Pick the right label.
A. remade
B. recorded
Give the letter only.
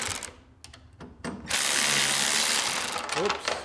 B